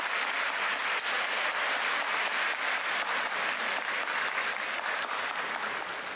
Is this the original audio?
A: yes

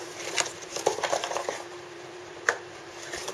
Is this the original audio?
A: no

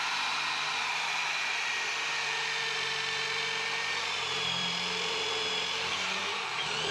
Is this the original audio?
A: no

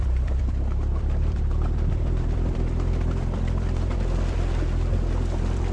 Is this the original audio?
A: no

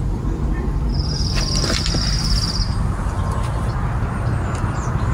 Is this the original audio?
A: yes